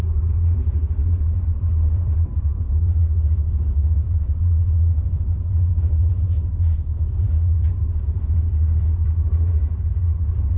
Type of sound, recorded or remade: remade